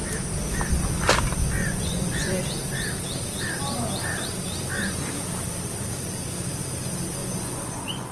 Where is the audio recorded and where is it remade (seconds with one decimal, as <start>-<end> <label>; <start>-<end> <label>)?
0.0-1.6 recorded; 1.6-2.4 remade; 2.4-7.2 recorded; 7.2-8.1 remade